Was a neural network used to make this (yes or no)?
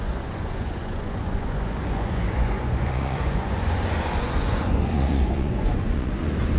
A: yes